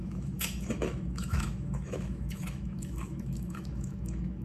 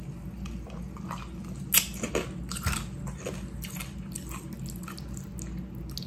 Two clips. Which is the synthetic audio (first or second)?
first